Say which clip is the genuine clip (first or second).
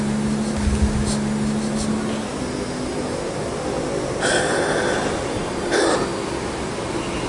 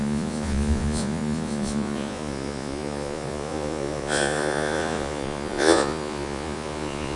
first